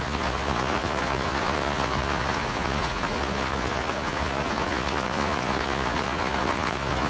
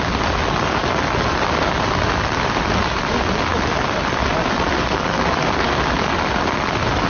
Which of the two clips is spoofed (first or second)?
first